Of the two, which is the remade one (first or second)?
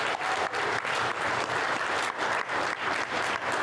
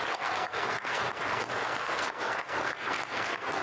second